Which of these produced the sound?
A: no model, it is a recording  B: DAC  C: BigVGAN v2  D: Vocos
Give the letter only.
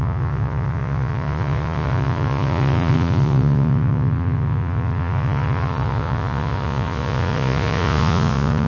D